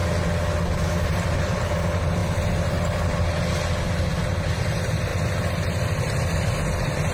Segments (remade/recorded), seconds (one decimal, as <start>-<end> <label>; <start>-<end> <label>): 0.0-0.9 recorded; 0.9-2.2 remade; 2.2-4.5 recorded; 4.5-5.1 remade; 5.1-6.0 recorded; 6.0-7.1 remade